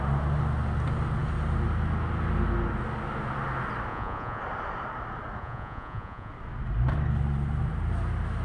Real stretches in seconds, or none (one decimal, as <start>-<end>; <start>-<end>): 0.0-3.9; 4.4-5.4; 6.3-8.4